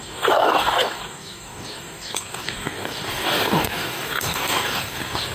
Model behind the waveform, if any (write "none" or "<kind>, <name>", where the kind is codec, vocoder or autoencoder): codec, DAC